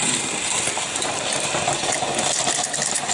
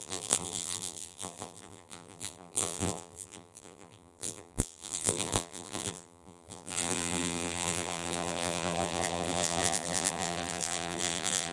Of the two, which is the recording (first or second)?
first